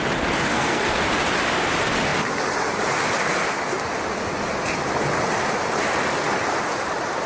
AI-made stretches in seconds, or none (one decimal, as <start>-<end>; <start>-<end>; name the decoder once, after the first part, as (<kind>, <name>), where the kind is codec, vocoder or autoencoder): 0.5-1.0 (codec, SNAC)

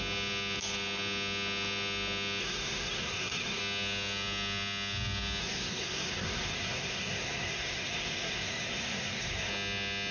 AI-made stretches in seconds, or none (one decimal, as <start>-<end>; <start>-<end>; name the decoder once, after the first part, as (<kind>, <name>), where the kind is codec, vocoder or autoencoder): 2.4-3.6 (codec, SNAC); 5.4-9.5

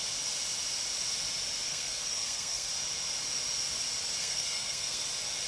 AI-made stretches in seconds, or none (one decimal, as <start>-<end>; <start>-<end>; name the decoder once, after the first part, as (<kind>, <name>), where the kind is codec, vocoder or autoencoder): 1.7-2.7 (codec, SNAC); 4.2-5.0

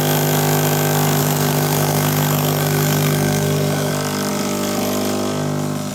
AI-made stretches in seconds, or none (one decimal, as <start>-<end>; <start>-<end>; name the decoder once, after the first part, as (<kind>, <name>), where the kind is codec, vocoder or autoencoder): 1.2-3.9 (codec, SNAC)

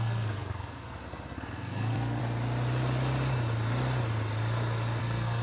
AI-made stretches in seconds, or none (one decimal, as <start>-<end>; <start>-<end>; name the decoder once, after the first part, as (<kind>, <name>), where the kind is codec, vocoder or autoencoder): 0.0-2.2 (codec, SNAC); 5.0-5.4

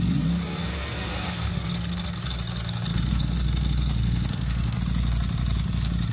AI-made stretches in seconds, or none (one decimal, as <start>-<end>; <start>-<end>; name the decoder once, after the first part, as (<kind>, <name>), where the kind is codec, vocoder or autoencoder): 0.6-2.0 (codec, SNAC); 2.9-4.8

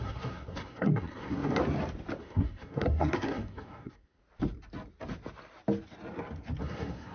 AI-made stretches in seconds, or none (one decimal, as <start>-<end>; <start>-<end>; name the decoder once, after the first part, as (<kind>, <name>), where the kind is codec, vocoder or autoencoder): 0.0-1.6 (codec, SNAC); 2.2-4.2; 6.6-7.1